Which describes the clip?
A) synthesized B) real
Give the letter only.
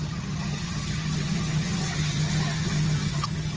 A